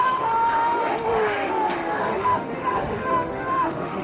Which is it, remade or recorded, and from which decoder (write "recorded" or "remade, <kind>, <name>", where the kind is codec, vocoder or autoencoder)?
remade, autoencoder, DAC-VAE